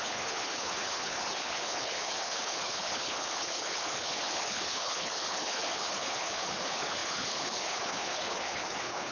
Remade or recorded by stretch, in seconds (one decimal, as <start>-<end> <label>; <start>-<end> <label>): 0.0-9.1 remade